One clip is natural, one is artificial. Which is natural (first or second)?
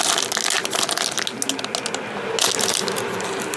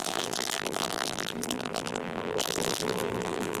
first